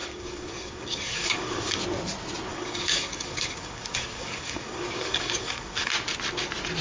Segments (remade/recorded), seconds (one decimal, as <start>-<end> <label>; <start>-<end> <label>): 0.0-1.8 remade; 1.8-2.5 recorded; 2.5-5.9 remade; 5.9-6.8 recorded

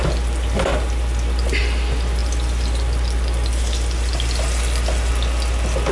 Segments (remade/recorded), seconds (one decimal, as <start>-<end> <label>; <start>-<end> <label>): 0.0-5.9 recorded